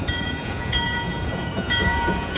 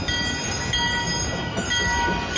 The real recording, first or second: second